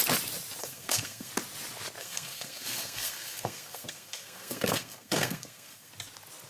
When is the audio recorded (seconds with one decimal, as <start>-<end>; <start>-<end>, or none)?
0.0-0.6; 1.3-2.0; 5.9-6.5